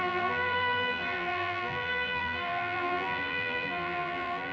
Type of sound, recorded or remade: remade